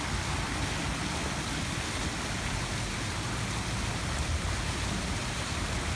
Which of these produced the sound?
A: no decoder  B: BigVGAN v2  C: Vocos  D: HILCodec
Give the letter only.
A